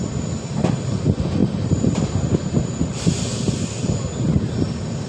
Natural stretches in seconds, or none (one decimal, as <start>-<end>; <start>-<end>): 0.0-1.4; 2.3-5.1